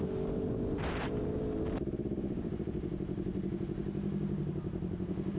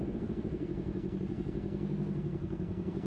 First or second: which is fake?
second